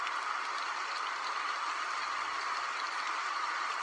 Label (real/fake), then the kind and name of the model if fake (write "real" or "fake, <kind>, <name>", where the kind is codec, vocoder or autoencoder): real